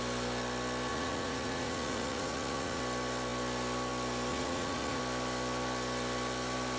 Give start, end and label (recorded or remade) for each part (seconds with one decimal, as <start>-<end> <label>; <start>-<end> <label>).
0.0-0.9 recorded; 0.9-2.8 remade; 2.8-4.3 recorded; 4.3-5.0 remade; 5.0-6.8 recorded